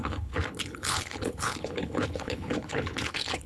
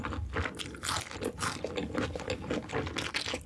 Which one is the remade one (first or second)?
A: first